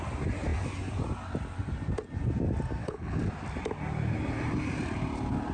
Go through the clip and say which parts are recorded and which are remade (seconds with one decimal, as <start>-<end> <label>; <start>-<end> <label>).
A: 0.0-2.8 recorded; 2.8-3.3 remade; 3.3-5.5 recorded